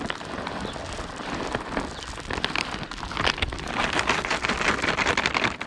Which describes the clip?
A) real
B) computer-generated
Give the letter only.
A